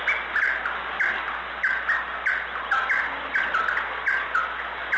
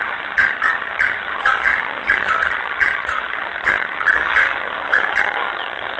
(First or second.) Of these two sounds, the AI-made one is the second